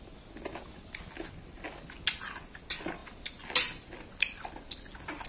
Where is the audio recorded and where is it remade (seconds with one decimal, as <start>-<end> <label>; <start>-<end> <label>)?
0.0-5.3 recorded